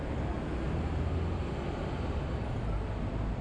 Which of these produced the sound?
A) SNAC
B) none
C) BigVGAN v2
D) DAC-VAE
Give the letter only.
B